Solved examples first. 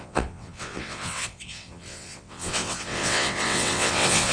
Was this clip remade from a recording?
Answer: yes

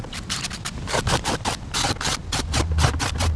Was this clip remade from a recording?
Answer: no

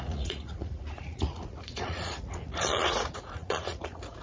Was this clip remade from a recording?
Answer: yes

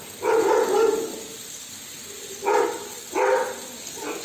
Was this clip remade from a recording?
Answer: no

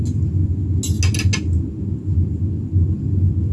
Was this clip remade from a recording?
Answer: no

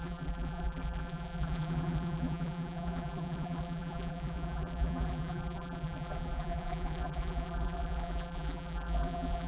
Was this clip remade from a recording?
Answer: yes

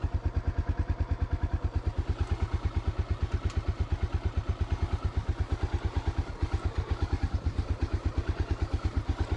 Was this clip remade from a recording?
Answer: no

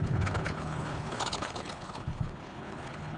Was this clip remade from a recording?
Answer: yes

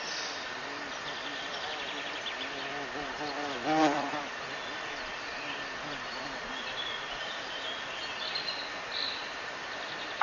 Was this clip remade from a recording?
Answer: no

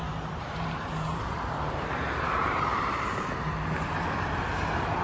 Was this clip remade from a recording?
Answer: yes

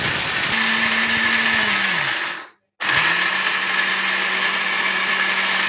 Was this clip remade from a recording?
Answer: no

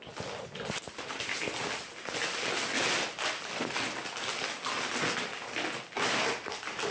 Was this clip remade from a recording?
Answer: no